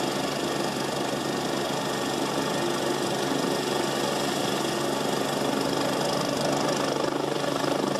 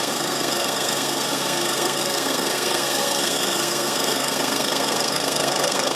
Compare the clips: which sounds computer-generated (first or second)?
second